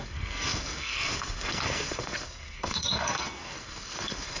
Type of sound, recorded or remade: remade